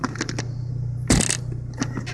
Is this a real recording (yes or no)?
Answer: yes